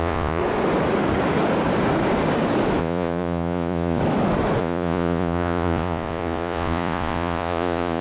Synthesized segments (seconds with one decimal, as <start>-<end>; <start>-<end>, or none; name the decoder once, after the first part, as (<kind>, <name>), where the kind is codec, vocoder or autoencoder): 0.0-0.4 (vocoder, Vocos); 2.8-4.0; 4.6-8.0